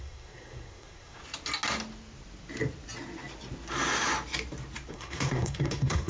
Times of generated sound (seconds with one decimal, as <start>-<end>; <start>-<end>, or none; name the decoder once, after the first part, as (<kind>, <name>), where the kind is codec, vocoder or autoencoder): 0.0-1.2 (codec, SNAC); 4.9-6.1